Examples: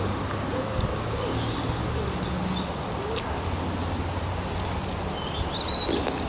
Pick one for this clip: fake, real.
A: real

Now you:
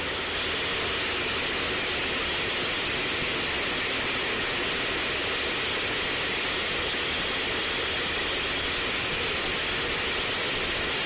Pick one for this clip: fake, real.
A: real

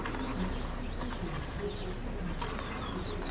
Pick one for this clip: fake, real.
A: real